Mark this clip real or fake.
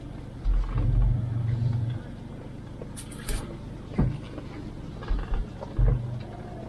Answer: real